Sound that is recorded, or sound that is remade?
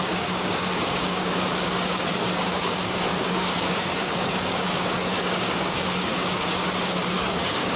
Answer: remade